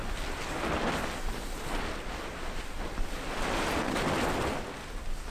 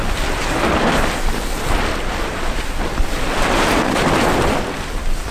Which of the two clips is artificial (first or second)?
second